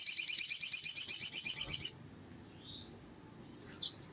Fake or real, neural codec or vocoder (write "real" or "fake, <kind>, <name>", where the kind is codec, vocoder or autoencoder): real